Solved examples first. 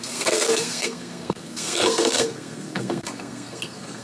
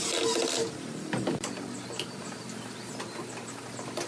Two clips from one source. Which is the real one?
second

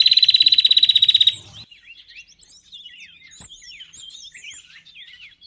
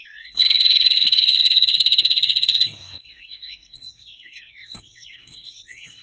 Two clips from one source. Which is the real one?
first